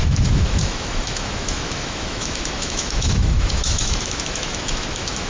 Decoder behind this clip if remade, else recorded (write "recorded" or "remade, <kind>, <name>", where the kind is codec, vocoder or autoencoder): remade, autoencoder, DAC-VAE